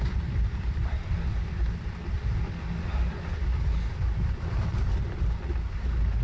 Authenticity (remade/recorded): recorded